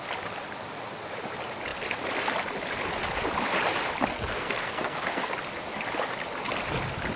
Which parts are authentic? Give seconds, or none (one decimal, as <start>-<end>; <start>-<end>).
0.0-4.1; 5.3-7.2

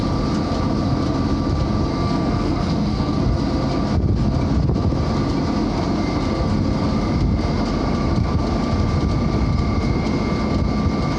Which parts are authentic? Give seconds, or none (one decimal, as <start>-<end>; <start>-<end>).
0.0-1.9; 3.2-11.2

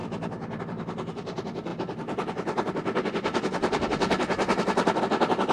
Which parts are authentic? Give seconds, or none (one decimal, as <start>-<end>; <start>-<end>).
0.0-5.5

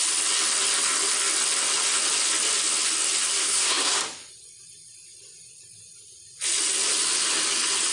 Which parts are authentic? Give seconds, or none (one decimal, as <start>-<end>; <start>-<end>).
0.0-3.4; 4.0-7.9

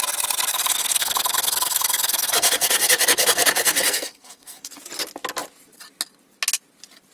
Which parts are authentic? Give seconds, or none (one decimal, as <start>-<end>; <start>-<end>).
0.0-0.5; 4.8-7.1

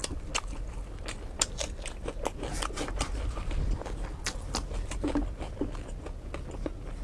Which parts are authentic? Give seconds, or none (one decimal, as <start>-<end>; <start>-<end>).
0.0-7.0

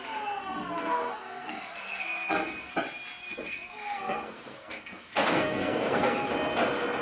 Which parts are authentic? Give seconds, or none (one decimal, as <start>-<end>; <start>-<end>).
0.0-0.4; 2.7-3.2; 6.3-7.0